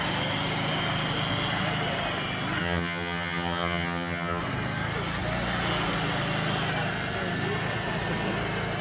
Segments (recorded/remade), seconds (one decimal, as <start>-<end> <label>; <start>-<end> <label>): 0.0-2.6 recorded; 2.6-4.4 remade; 4.4-8.8 recorded